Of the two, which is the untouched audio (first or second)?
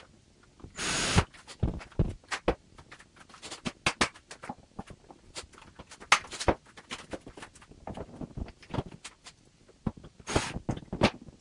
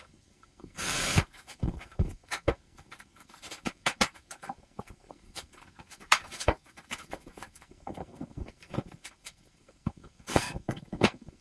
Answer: first